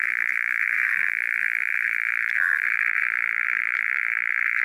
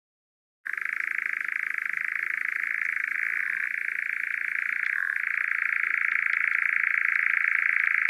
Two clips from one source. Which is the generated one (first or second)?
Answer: first